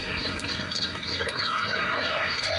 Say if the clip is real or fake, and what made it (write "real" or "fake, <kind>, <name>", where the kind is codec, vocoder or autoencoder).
fake, codec, SNAC